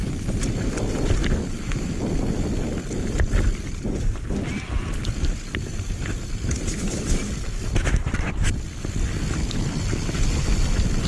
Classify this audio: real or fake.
fake